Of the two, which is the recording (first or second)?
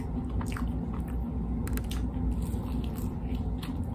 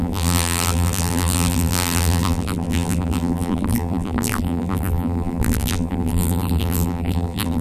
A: first